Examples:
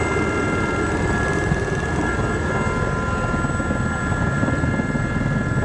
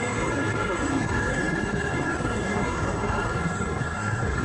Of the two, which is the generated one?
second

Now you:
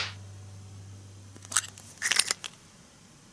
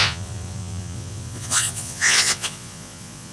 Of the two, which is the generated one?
second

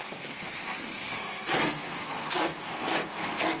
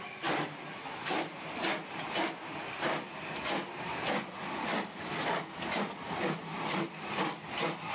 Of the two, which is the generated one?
first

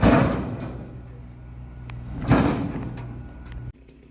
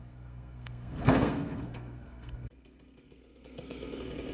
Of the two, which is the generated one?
second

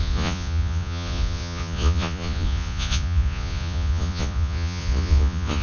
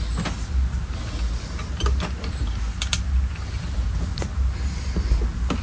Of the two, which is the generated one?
first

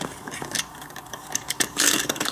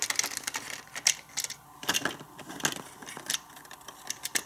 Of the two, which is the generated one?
first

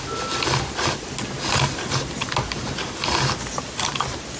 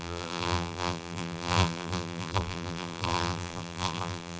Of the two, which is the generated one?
second